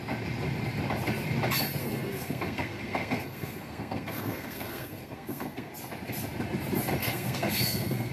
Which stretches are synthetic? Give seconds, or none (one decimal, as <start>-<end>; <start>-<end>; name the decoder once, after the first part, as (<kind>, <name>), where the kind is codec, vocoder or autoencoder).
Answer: 1.8-5.7 (codec, SNAC); 7.0-8.1